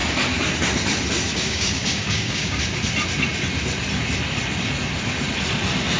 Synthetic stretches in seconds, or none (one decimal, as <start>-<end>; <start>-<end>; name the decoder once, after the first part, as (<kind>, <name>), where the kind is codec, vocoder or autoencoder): 1.3-2.6 (codec, DAC)